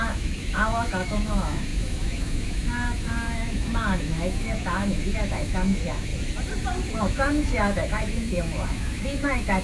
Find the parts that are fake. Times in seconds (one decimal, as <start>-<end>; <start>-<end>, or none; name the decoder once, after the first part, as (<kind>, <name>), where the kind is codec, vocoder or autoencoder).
0.0-6.1 (autoencoder, DAC-VAE); 6.9-9.6

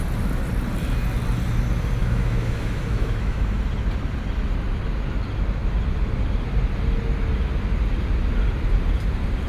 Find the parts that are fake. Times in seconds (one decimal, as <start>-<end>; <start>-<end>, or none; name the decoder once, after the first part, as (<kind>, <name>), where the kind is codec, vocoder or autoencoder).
2.0-3.6 (autoencoder, DAC-VAE)

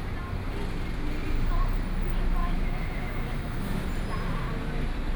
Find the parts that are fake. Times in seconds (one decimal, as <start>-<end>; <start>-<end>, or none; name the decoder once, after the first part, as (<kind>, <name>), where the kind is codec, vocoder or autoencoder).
2.4-3.6 (autoencoder, DAC-VAE)

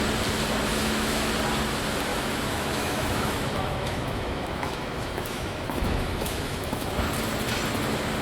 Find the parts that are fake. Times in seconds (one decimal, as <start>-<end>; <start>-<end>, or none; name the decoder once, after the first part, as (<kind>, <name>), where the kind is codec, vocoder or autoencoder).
0.7-1.3 (autoencoder, DAC-VAE); 2.1-7.0

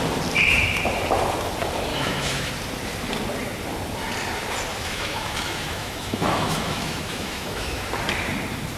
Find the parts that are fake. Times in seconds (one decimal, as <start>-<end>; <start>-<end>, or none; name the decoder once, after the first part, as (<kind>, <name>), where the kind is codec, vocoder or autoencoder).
1.9-2.5 (autoencoder, DAC-VAE); 4.7-7.9

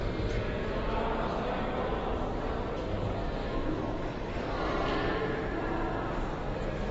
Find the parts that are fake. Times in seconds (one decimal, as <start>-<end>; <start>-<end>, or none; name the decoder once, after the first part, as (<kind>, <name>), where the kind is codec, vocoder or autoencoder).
3.4-4.3 (autoencoder, DAC-VAE)

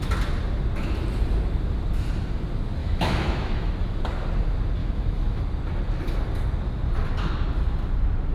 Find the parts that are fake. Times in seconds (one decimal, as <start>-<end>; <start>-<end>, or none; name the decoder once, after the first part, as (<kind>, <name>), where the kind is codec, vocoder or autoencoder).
2.8-3.7 (autoencoder, DAC-VAE); 4.8-5.4